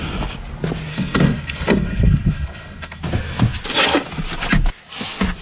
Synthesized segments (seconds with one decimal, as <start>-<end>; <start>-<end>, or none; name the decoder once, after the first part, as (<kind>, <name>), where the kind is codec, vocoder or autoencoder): 0.9-3.0 (codec, SNAC)